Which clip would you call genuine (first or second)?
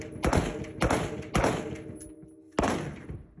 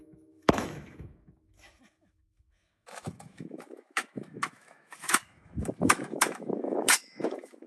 first